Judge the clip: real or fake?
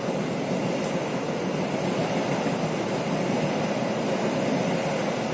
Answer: real